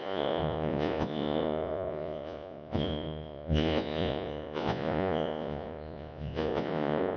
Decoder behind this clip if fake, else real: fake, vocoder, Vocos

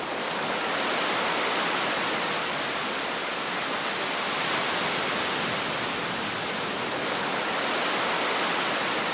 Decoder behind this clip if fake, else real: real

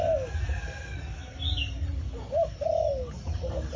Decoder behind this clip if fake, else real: real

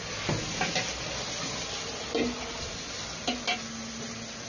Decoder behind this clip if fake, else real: real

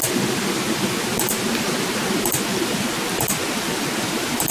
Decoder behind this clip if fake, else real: real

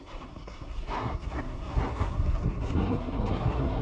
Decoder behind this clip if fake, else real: fake, codec, SNAC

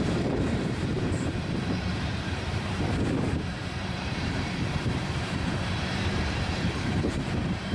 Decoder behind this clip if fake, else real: fake, vocoder, BigVGAN v2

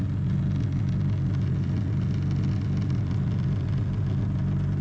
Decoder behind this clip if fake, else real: real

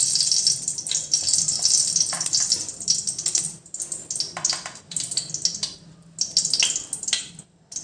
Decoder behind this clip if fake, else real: real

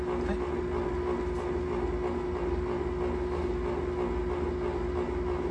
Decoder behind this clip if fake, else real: real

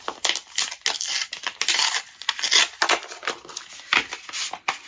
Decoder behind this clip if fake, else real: real